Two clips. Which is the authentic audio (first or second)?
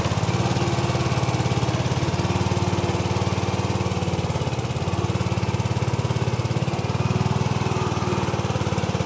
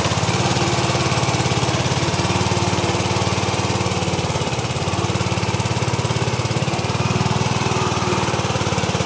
first